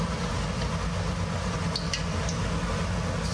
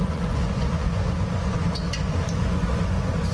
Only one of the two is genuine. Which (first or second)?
first